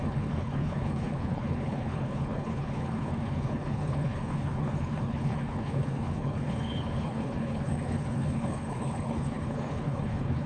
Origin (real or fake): fake